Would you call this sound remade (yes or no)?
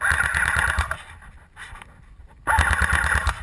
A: no